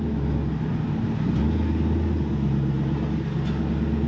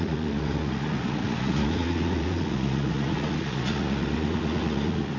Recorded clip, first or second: first